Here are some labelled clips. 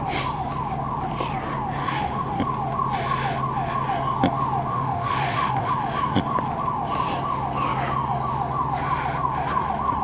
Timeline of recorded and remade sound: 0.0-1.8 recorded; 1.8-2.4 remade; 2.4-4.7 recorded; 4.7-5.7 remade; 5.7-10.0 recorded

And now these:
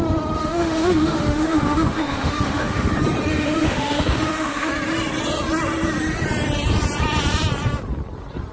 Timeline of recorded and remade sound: 0.0-0.4 recorded; 0.4-2.9 remade; 2.9-3.3 recorded; 3.3-4.7 remade; 4.7-8.5 recorded

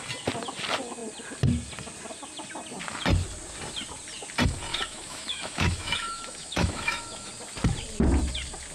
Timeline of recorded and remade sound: 0.0-4.7 recorded; 4.7-7.3 remade; 7.3-8.7 recorded

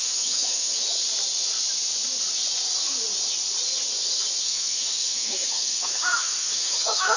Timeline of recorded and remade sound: 0.0-0.9 remade; 0.9-4.4 recorded; 4.4-7.2 remade

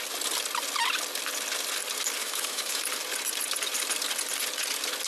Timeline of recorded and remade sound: 0.0-2.2 recorded; 2.2-2.8 remade; 2.8-5.1 recorded